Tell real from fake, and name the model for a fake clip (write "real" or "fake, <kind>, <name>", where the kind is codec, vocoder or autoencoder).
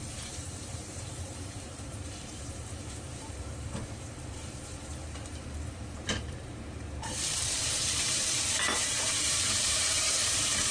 fake, vocoder, BigVGAN v2